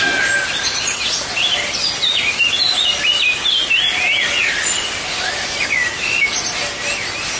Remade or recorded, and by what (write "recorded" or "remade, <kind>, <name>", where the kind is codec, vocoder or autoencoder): recorded